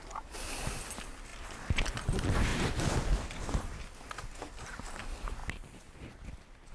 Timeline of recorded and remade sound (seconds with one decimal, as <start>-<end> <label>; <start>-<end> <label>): 0.0-6.7 recorded